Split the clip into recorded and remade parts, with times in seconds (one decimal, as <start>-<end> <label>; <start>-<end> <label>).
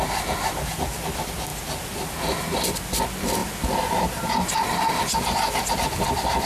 0.0-6.5 recorded